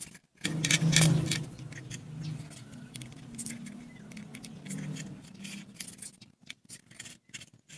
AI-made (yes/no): no